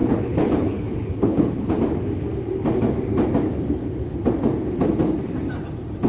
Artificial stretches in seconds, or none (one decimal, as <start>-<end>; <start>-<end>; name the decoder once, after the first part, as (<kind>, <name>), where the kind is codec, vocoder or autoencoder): 0.0-1.8 (codec, HILCodec)